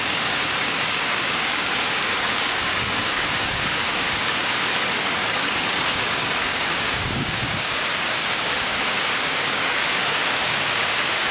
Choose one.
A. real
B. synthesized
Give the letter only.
B